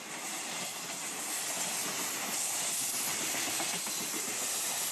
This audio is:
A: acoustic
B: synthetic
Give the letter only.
A